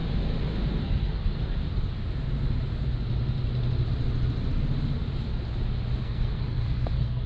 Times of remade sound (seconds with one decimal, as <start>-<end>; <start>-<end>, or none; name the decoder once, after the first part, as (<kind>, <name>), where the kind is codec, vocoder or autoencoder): 0.8-1.6 (codec, SNAC); 6.0-7.3